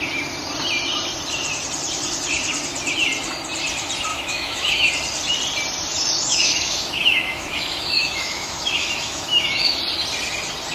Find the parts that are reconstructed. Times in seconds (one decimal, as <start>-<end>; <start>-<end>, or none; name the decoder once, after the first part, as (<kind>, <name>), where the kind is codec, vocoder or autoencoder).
4.1-4.9 (autoencoder, DAC-VAE); 6.3-9.8